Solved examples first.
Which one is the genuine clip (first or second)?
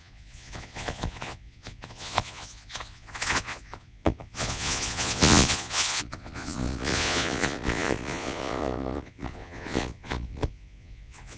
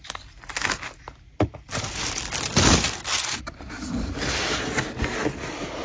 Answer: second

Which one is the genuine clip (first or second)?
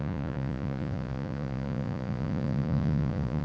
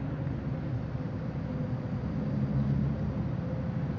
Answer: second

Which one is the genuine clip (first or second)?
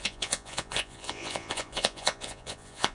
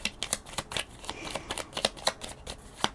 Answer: second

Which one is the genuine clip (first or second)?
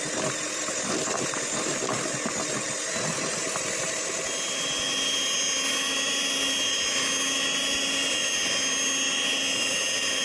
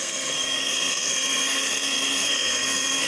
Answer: first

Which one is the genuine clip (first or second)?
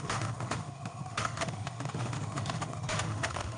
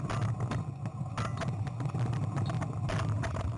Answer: second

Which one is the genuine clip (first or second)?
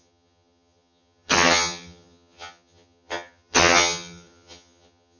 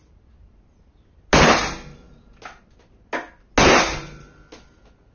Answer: second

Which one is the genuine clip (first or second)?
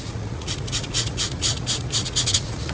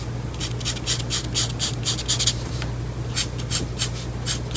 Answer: second